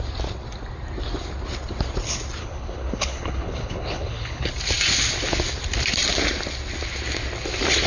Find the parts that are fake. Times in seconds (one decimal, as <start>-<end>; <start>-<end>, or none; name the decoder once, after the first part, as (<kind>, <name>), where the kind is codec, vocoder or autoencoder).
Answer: 2.4-4.5 (codec, HILCodec)